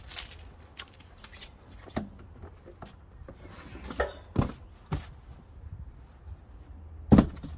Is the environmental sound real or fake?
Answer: real